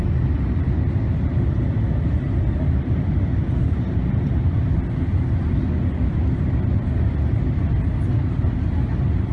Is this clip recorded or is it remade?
recorded